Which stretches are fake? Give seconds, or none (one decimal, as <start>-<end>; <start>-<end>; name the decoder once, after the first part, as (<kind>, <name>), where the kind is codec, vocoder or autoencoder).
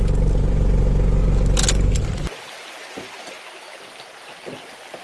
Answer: none